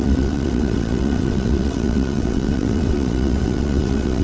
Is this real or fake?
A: fake